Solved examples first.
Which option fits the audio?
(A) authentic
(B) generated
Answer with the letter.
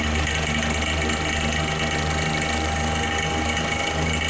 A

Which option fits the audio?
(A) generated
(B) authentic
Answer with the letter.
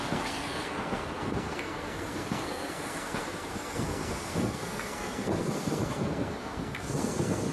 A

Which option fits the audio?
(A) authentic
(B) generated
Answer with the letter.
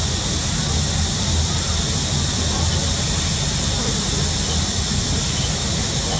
A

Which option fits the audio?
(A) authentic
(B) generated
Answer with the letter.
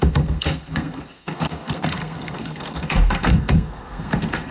B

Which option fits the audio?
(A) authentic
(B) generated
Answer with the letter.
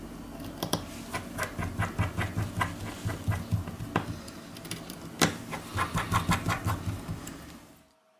A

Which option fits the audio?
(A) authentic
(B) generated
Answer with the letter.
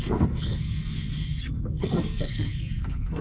B